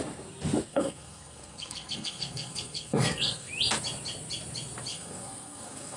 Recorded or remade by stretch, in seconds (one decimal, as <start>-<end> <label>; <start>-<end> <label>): 0.0-0.7 recorded; 0.7-3.5 remade; 3.5-4.9 recorded; 4.9-6.0 remade